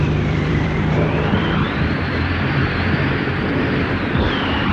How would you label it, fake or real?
fake